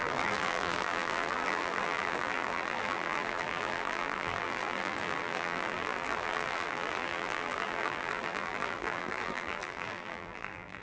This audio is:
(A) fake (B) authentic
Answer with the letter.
A